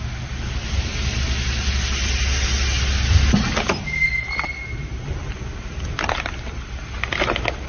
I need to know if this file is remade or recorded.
recorded